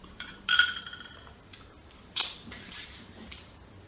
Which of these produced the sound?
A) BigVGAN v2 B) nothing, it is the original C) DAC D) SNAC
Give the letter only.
A